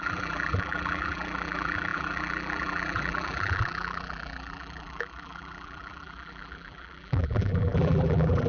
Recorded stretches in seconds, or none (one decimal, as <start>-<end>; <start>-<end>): none